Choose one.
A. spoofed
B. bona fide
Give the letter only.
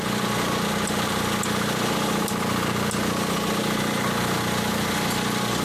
B